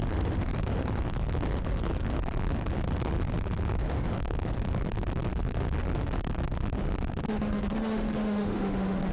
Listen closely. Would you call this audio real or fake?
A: fake